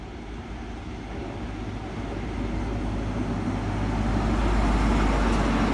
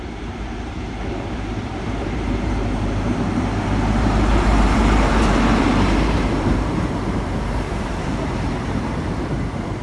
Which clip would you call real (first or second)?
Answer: first